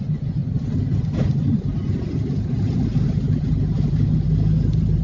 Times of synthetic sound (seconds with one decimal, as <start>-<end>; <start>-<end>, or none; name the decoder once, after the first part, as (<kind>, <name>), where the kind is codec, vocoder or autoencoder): none